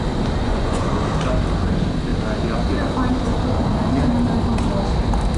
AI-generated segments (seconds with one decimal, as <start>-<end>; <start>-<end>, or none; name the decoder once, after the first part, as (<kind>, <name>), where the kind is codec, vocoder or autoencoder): 0.4-1.0 (vocoder, Vocos)

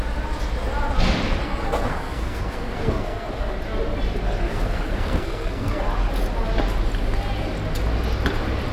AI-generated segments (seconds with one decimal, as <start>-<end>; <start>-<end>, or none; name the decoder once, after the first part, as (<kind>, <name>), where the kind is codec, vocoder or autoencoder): 1.4-3.3 (codec, SNAC); 4.5-5.8

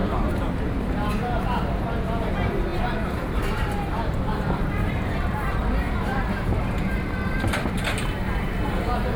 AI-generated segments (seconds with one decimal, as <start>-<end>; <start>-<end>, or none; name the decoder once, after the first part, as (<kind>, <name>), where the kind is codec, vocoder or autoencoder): 0.0-1.1 (vocoder, BigVGAN v2); 2.7-6.6

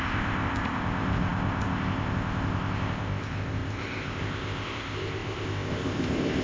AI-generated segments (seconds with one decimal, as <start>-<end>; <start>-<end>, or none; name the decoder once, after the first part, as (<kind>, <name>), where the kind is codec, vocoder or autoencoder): 0.0-6.4 (codec, ZipCodec)